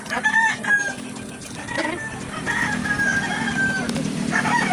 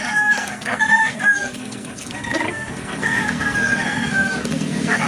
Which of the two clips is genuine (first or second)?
first